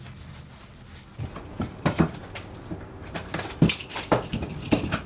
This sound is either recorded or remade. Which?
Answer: recorded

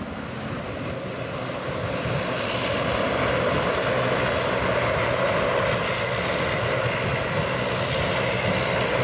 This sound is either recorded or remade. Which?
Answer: recorded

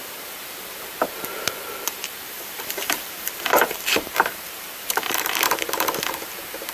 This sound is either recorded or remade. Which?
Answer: remade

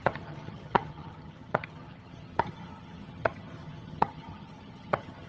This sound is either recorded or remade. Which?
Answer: remade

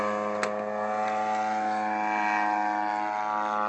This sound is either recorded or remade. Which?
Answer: recorded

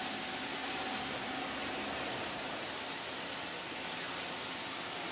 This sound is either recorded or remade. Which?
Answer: recorded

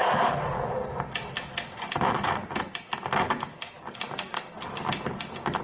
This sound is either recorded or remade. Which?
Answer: recorded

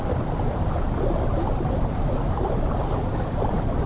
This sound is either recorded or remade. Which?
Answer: remade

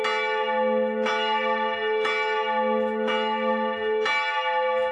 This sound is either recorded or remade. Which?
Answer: recorded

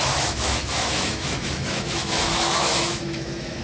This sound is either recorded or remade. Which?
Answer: remade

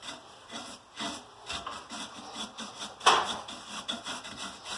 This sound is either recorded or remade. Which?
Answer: recorded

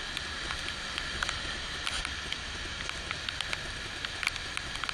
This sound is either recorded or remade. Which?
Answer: recorded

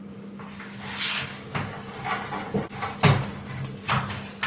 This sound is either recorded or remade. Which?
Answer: recorded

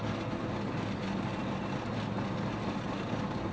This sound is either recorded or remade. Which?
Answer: recorded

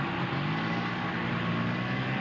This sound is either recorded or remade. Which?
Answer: recorded